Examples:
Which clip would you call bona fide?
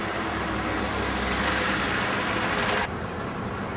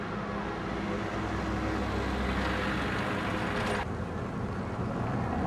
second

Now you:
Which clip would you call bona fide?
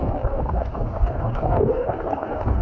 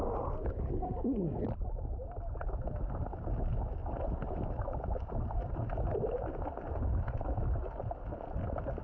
second